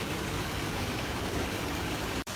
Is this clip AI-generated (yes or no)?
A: yes